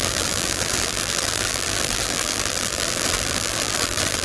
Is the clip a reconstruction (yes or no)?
yes